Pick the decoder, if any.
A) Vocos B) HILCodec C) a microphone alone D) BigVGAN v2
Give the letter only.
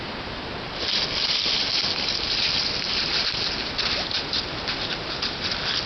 C